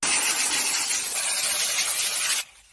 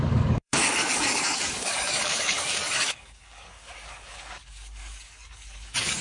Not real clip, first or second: second